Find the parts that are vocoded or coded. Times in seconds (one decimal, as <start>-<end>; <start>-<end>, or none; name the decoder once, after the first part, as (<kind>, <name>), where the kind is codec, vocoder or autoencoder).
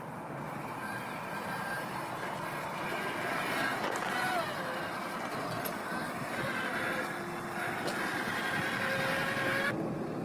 none